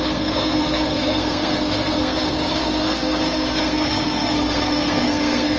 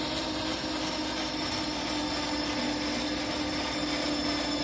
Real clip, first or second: second